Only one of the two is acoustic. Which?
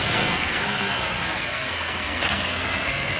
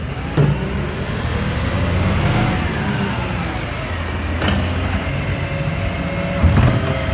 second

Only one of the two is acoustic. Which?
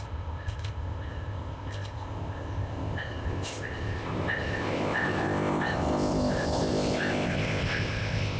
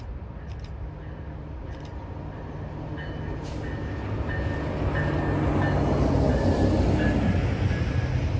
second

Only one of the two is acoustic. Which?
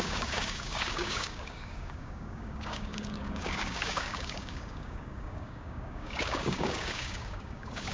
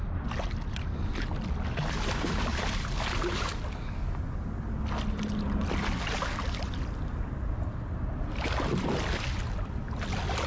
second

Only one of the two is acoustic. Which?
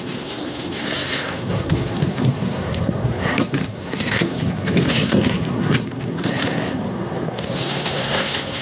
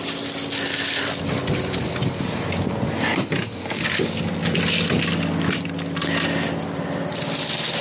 second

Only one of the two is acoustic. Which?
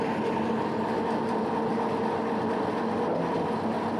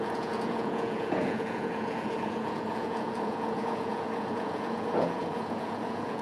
first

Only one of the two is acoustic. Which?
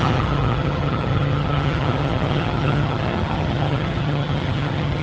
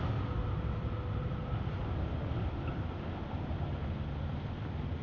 second